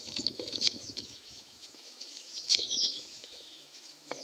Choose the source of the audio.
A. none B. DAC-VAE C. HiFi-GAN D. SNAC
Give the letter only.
B